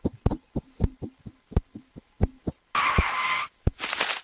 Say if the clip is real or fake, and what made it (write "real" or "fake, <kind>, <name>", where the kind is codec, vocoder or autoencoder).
real